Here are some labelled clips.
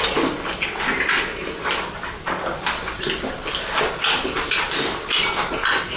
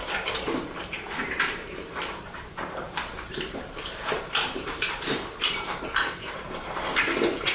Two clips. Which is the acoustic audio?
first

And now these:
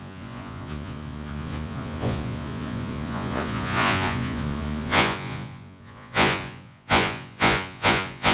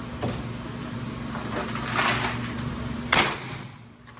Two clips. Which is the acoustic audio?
second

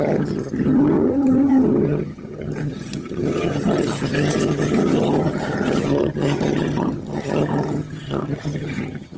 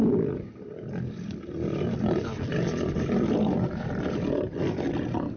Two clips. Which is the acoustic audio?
second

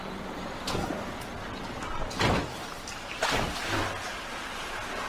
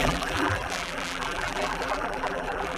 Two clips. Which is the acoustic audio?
first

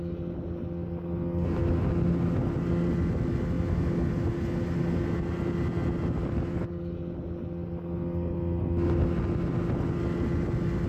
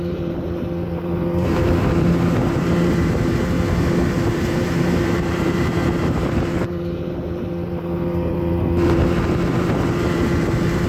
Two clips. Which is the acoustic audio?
first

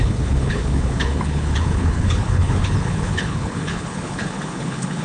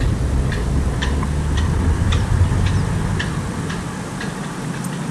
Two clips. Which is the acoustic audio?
second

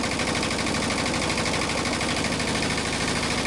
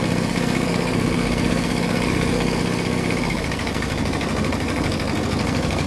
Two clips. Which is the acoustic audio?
first